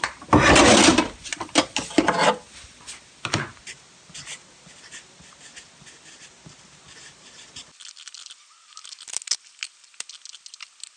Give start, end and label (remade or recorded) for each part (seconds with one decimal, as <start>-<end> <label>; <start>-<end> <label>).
0.0-11.0 recorded